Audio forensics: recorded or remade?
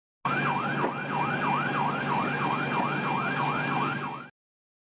recorded